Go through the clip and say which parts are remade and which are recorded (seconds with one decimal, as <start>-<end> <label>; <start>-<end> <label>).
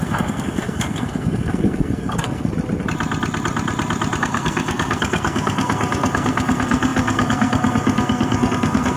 0.0-2.5 remade; 2.5-4.2 recorded; 4.2-9.0 remade